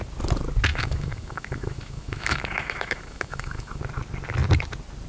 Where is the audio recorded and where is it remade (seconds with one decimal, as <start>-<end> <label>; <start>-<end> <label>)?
0.0-0.7 recorded; 0.7-3.8 remade; 3.8-5.1 recorded